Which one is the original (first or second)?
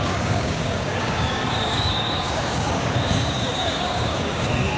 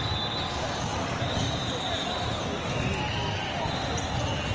second